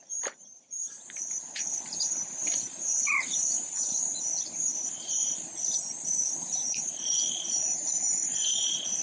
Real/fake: fake